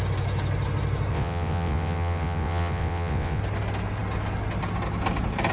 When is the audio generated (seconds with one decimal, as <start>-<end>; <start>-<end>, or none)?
1.1-3.4